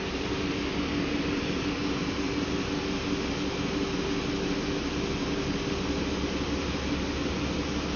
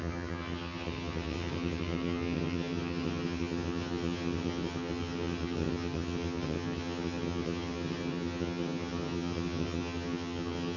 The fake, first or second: second